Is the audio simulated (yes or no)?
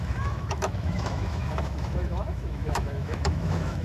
yes